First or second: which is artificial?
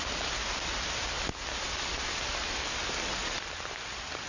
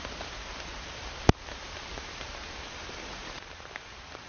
second